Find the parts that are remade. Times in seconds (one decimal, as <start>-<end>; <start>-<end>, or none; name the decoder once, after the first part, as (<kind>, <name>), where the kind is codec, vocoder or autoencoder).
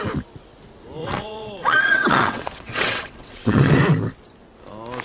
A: 1.0-3.7 (vocoder, WaveNeXt)